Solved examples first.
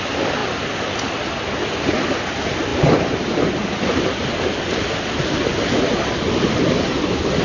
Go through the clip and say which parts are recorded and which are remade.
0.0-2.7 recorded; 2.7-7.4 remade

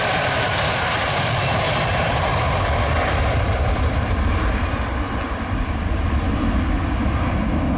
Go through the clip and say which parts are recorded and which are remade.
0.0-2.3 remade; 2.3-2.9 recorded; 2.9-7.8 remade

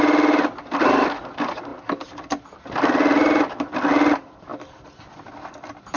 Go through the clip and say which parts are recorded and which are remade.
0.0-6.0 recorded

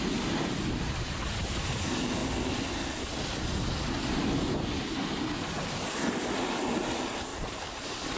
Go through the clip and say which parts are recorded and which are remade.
0.0-7.3 recorded; 7.3-8.2 remade

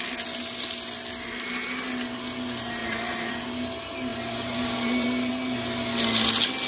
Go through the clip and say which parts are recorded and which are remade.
0.0-2.8 recorded; 2.8-3.3 remade; 3.3-4.1 recorded; 4.1-5.3 remade; 5.3-6.7 recorded

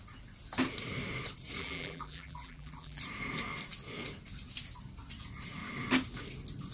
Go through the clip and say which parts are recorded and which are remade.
0.0-1.6 recorded; 1.6-3.0 remade; 3.0-6.7 recorded